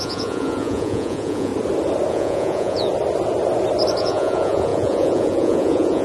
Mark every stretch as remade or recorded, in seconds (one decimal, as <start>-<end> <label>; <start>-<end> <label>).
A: 0.0-1.5 remade; 1.5-2.1 recorded; 2.1-2.9 remade; 2.9-4.0 recorded; 4.0-6.0 remade